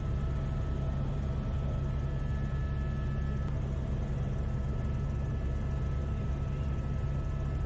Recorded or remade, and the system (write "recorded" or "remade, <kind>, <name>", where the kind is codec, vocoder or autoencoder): recorded